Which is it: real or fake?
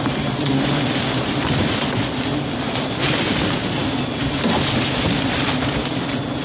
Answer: real